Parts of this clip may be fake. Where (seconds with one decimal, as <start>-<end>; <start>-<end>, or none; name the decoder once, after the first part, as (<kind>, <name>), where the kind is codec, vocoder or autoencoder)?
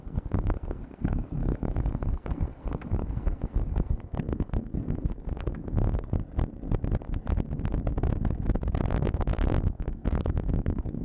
0.0-6.2 (codec, SNAC); 8.9-11.0